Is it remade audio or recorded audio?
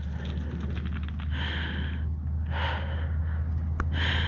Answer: recorded